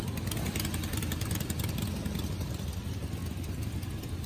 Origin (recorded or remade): recorded